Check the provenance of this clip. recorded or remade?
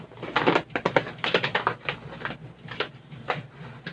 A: recorded